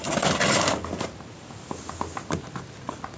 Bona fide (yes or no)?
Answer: yes